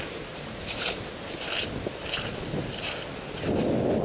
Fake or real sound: real